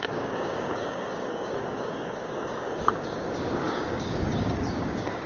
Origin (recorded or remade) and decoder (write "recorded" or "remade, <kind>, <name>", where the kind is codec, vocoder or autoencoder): remade, codec, DAC